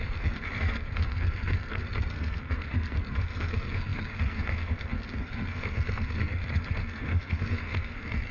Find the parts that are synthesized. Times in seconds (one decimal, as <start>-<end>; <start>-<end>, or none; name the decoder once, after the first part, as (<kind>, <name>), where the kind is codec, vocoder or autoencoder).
0.0-8.3 (codec, SNAC)